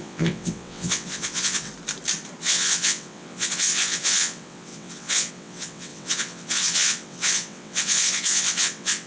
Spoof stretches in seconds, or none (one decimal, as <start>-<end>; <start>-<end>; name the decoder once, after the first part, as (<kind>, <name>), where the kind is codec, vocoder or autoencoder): 0.0-1.7 (vocoder, WaveNeXt); 2.4-9.1